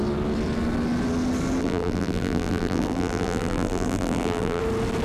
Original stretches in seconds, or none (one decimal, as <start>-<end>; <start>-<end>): 0.0-1.6; 4.6-5.0